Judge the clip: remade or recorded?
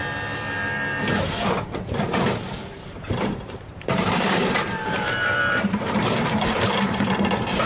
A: remade